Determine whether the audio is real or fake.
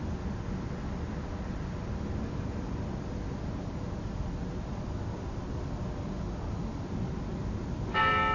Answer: real